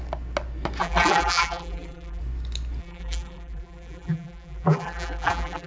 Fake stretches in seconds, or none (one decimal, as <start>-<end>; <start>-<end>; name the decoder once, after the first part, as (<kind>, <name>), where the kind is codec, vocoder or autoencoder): 0.8-2.2 (vocoder, BigVGAN v2); 2.8-5.7